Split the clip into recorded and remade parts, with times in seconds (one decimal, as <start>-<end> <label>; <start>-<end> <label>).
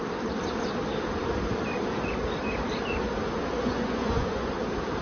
0.0-3.6 recorded; 3.6-4.5 remade; 4.5-5.0 recorded